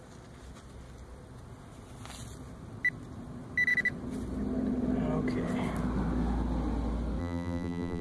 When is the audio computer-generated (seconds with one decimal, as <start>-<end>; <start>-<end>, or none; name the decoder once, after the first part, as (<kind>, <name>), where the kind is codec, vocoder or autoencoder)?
7.2-8.0 (vocoder, BigVGAN v2)